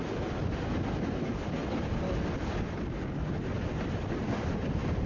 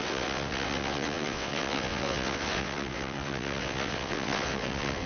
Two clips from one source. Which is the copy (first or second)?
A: second